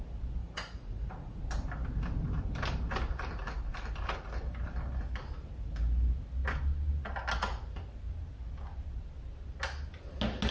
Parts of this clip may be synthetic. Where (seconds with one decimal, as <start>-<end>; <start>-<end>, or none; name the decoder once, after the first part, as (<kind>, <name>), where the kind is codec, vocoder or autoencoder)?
0.4-1.4 (vocoder, Vocos)